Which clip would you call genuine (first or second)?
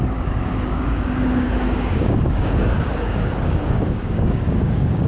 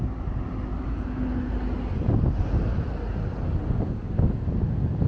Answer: second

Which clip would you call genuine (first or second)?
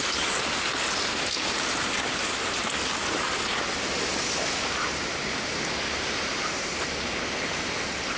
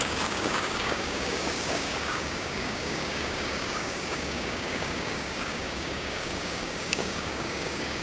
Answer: first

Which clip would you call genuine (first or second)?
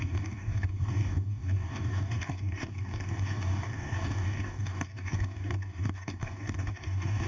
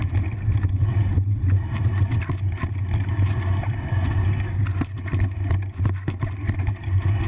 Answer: second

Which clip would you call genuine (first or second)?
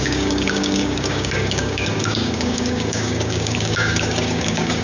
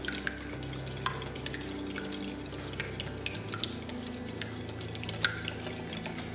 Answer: second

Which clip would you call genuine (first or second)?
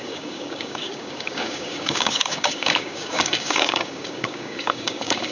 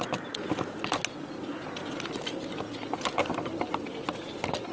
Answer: second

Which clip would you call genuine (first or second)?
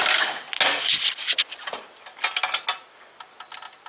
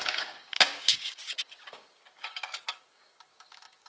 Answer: first